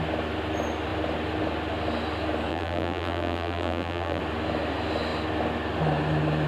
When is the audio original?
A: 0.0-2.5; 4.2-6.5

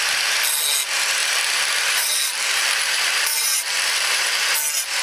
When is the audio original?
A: 0.0-1.2; 4.2-5.0

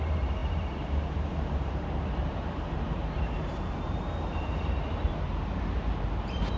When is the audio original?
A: none

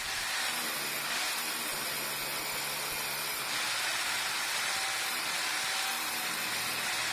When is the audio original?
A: 0.0-3.9; 6.1-7.1

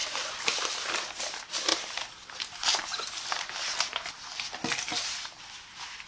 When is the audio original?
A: 0.9-1.7; 5.4-6.1

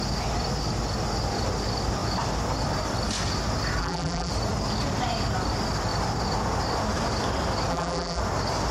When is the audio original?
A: 0.0-3.8; 4.3-7.7; 8.2-8.7

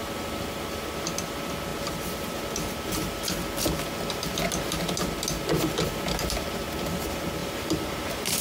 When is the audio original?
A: 0.0-7.4; 8.0-8.4